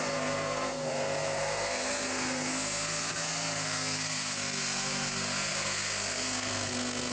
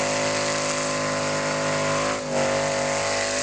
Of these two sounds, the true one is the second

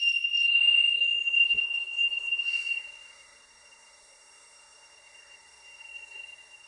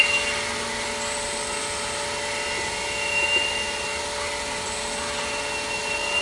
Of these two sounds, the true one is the second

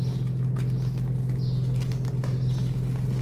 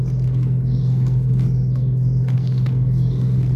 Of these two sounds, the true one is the first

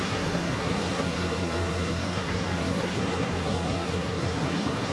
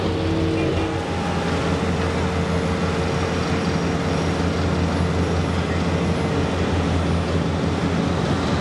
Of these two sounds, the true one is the second